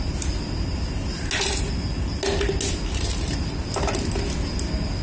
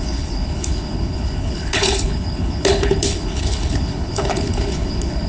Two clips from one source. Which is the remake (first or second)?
second